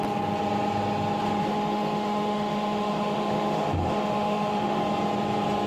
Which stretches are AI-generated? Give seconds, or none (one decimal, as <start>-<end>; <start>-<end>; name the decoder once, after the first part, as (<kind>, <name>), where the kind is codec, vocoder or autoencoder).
1.4-4.8 (autoencoder, DAC-VAE)